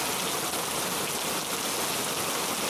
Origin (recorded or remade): recorded